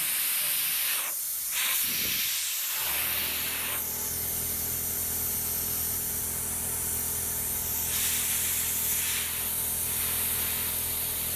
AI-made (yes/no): no